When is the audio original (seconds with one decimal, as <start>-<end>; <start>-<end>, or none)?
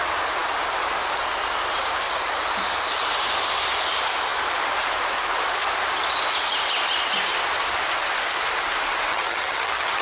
0.0-9.1